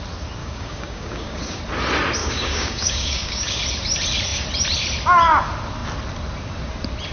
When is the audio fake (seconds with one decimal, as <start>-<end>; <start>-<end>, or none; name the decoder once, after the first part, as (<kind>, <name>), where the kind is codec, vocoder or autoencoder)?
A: 0.4-1.6 (codec, DAC); 2.2-3.6